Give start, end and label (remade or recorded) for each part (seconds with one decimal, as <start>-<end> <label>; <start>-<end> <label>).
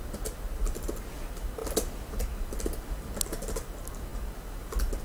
0.0-5.0 recorded